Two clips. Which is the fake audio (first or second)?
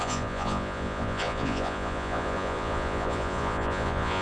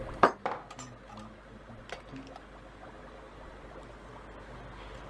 first